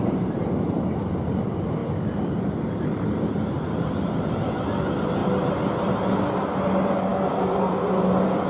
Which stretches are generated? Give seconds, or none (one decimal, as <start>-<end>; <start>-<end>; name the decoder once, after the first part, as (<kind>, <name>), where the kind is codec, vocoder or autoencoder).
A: none